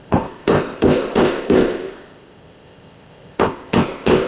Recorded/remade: remade